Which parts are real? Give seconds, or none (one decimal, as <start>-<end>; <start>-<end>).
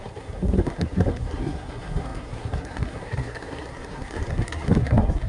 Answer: none